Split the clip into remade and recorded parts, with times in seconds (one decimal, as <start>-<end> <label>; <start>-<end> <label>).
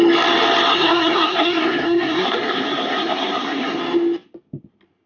0.0-0.7 recorded; 0.7-3.8 remade; 3.8-5.1 recorded